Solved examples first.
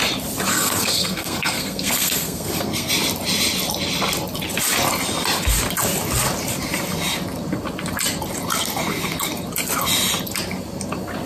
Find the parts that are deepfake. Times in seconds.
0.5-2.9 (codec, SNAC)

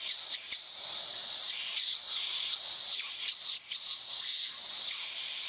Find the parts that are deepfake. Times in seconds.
none

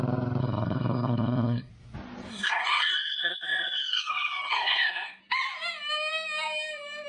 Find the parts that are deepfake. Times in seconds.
0.4-1.7 (codec, SNAC); 2.3-5.2

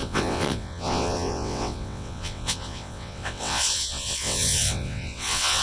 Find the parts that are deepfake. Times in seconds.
0.0-5.6 (vocoder, WaveNeXt)

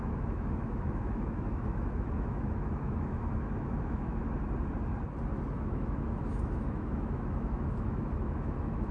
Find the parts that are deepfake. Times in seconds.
0.0-4.2 (autoencoder, DAC-VAE); 5.5-8.9

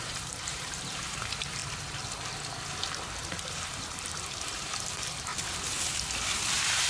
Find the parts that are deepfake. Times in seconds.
0.0-1.6 (vocoder, BigVGAN v2); 3.4-5.3; 6.5-6.9

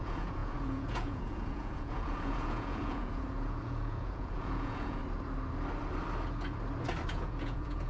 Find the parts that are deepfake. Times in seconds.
0.0-5.0 (vocoder, Vocos); 7.1-7.9

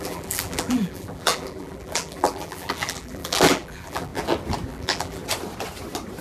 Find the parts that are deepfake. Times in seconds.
0.0-4.1 (vocoder, BigVGAN v2); 4.7-5.2